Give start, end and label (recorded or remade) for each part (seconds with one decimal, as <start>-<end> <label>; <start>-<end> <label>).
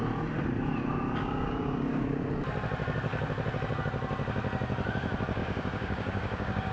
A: 0.0-1.2 recorded; 1.2-2.3 remade; 2.3-5.4 recorded; 5.4-6.7 remade